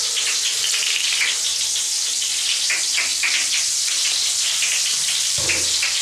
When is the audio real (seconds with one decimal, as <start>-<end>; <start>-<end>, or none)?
0.0-3.1; 3.9-4.9